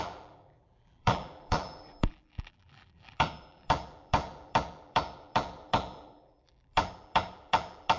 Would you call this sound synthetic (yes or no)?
yes